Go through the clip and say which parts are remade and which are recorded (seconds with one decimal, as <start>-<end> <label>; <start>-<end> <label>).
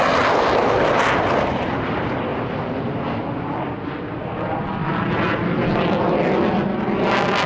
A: 0.0-7.5 recorded